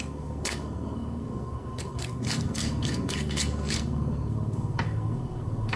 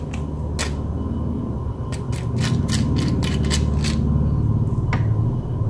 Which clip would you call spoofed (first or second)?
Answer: first